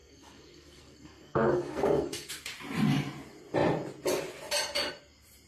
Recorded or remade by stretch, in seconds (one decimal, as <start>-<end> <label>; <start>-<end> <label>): 0.0-2.3 remade; 2.3-5.5 recorded